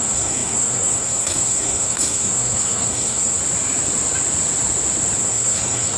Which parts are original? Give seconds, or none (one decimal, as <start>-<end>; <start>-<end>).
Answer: 3.4-5.2

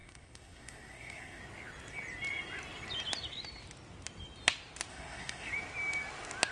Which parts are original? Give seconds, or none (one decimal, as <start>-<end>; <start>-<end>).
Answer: 1.4-4.9; 5.5-6.5